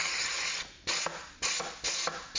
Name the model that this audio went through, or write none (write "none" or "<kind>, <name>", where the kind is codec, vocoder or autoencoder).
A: none